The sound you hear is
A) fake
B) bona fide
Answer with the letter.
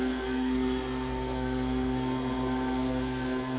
A